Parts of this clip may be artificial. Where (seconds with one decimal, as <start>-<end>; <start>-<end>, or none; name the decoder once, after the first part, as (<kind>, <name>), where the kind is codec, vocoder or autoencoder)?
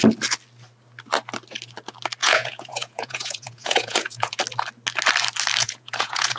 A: 2.2-4.4 (vocoder, Vocos); 5.6-6.4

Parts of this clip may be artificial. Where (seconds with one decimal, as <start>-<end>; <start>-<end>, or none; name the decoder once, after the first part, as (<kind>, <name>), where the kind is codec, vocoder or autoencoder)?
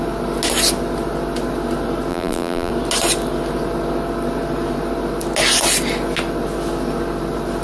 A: 2.1-2.7 (vocoder, BigVGAN v2)